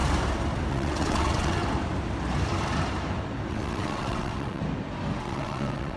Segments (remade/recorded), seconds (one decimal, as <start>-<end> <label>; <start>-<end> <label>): 0.0-0.7 recorded; 0.7-1.6 remade; 1.6-3.5 recorded; 3.5-4.6 remade; 4.6-5.2 recorded; 5.2-6.0 remade